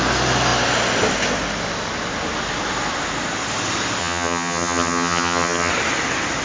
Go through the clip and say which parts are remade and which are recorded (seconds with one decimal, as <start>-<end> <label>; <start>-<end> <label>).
0.0-4.0 recorded; 4.0-5.7 remade; 5.7-6.4 recorded